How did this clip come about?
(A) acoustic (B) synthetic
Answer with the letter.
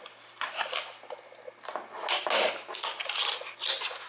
A